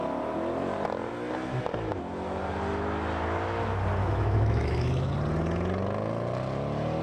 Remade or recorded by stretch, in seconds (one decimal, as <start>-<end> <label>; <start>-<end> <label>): 0.0-4.0 recorded; 4.0-5.1 remade; 5.1-7.0 recorded